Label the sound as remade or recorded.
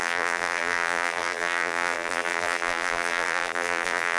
remade